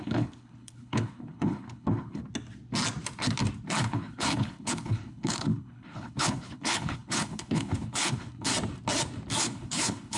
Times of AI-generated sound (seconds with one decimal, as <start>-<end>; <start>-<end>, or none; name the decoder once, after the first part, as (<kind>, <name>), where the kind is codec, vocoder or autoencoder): 0.0-2.2 (codec, HILCodec); 3.8-8.5; 9.4-10.2